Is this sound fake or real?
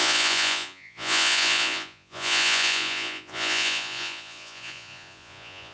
fake